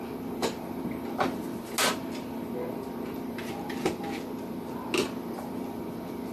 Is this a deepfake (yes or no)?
no